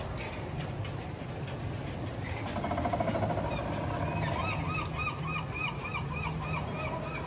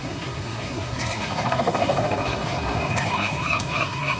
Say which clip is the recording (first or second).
first